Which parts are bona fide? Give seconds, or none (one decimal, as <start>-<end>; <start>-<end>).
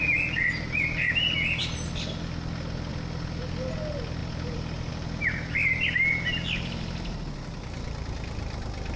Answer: 0.0-9.0